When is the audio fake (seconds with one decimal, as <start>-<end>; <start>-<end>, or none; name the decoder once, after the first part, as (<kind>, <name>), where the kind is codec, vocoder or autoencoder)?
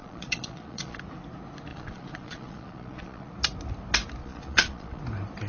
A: 0.0-1.0 (vocoder, Vocos); 1.7-3.3; 4.2-5.0